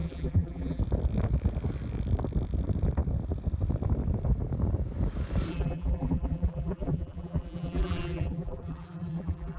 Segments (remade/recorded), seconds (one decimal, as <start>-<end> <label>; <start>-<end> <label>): 0.0-0.8 remade; 0.8-5.5 recorded; 5.5-9.6 remade